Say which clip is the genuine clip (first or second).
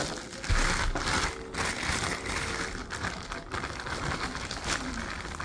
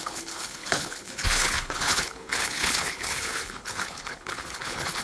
first